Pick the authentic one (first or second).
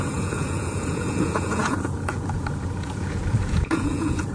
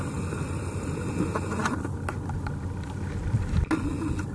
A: second